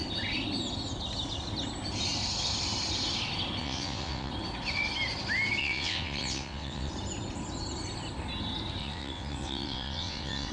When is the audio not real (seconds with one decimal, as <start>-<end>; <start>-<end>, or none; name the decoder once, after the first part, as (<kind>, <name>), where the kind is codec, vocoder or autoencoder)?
3.6-4.3 (vocoder, WaveNeXt); 5.6-6.9; 8.8-10.5